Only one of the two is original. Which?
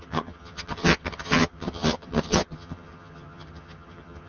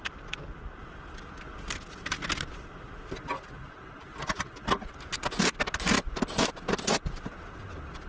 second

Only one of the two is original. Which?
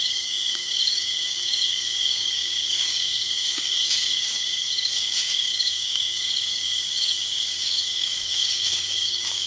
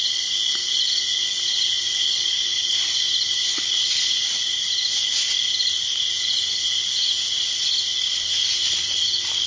second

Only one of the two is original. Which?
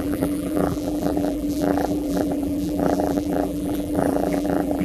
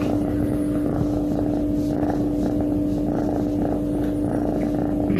second